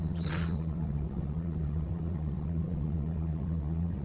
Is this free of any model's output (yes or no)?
no